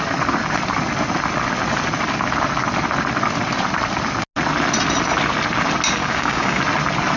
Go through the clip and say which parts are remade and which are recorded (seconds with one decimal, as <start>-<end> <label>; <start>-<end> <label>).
0.0-6.0 recorded; 6.0-6.6 remade; 6.6-7.2 recorded